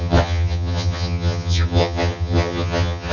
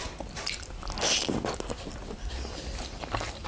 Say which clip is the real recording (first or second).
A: second